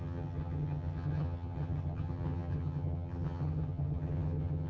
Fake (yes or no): yes